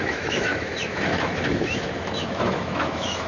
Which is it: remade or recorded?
remade